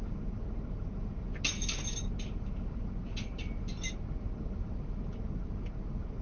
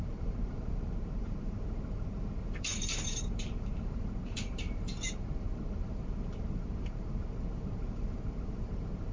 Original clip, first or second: first